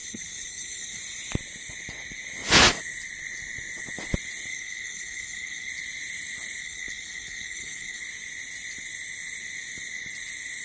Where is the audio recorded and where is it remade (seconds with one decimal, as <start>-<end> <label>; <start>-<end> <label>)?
0.0-1.0 remade; 1.0-4.5 recorded; 4.5-5.7 remade; 5.7-6.6 recorded; 6.6-8.0 remade; 8.0-10.6 recorded

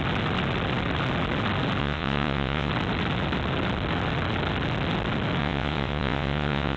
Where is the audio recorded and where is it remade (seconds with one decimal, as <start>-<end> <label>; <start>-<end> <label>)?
0.0-1.8 recorded; 1.8-2.7 remade; 2.7-5.4 recorded; 5.4-6.8 remade

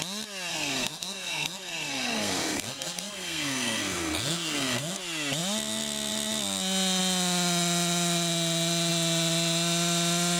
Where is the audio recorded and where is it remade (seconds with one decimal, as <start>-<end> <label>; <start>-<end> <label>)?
0.0-0.5 recorded; 0.5-5.0 remade; 5.0-10.4 recorded

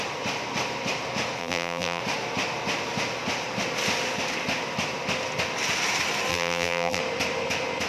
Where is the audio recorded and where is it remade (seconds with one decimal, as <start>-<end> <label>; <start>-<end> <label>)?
0.0-1.4 recorded; 1.4-2.0 remade; 2.0-6.3 recorded; 6.3-7.0 remade; 7.0-7.9 recorded